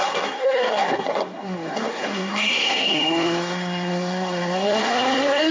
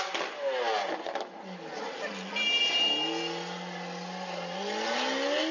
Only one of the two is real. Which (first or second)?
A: second